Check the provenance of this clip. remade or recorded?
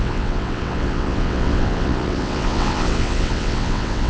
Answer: remade